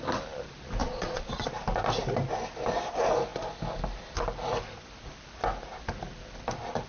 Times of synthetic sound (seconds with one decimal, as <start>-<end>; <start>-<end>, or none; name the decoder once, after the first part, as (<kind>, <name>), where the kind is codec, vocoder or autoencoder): 0.8-1.5 (vocoder, Vocos)